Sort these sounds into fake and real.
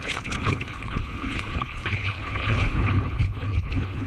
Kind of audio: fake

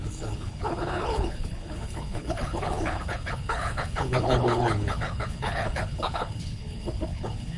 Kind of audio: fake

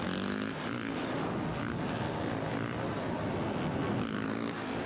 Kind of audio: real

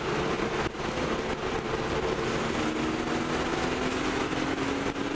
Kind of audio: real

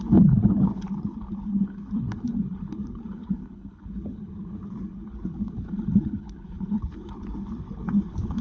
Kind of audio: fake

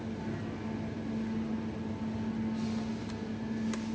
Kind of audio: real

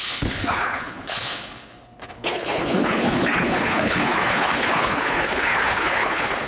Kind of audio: fake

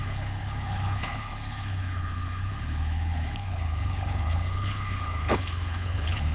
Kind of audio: fake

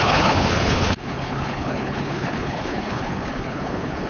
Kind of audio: fake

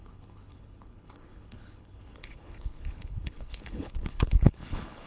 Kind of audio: fake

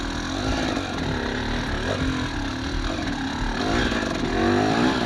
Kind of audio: real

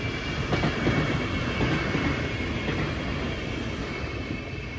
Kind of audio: real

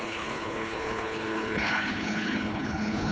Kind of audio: fake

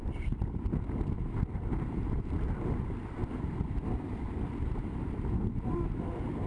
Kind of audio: real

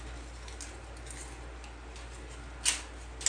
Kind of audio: real